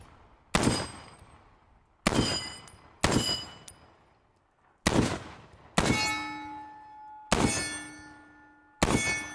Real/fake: real